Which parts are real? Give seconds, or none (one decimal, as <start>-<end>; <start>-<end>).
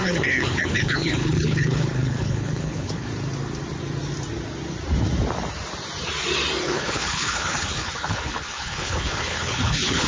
3.1-6.6